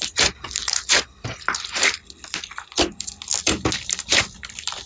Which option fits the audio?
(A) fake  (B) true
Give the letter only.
A